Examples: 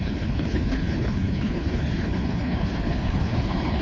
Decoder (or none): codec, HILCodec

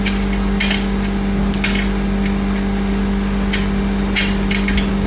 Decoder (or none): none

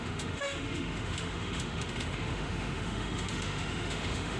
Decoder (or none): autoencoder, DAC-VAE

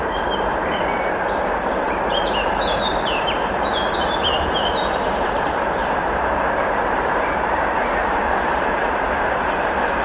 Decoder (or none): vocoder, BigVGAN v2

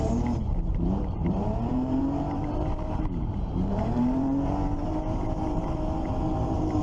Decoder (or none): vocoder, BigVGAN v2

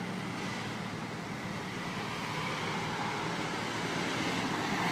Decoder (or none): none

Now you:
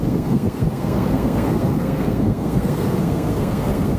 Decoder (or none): codec, SNAC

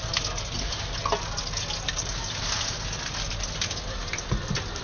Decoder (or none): none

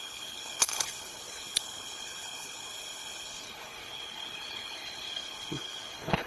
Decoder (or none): codec, HILCodec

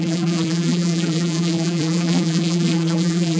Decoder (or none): vocoder, BigVGAN v2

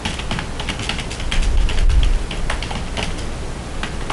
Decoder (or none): none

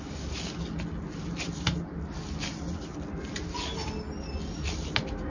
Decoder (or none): none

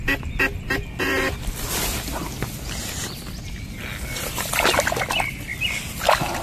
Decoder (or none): none